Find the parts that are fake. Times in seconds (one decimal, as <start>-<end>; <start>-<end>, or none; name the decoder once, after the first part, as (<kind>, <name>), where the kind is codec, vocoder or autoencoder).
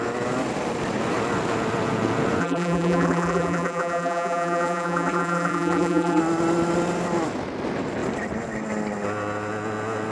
2.4-6.2 (vocoder, BigVGAN v2)